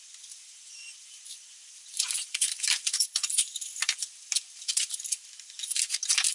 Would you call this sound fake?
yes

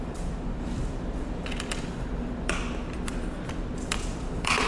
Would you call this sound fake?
yes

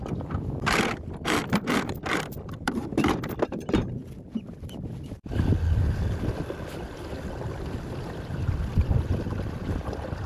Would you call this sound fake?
yes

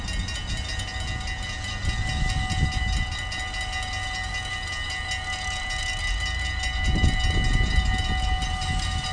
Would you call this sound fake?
no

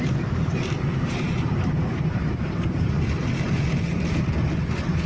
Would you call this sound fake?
yes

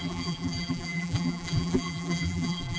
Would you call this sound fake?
yes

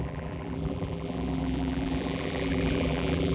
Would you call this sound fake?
yes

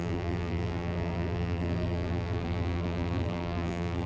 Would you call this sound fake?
yes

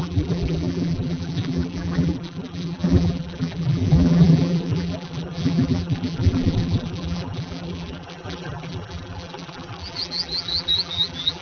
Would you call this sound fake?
yes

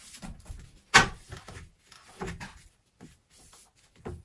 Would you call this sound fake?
no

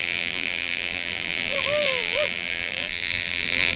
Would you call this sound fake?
yes